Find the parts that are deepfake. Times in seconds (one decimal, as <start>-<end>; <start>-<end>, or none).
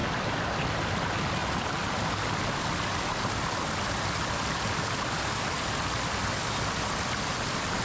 none